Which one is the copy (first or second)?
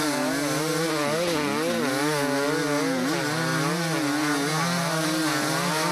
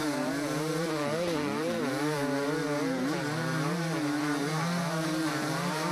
second